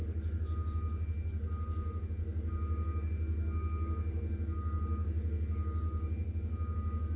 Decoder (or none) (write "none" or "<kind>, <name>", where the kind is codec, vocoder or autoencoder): none